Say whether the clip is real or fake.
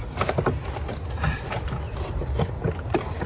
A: real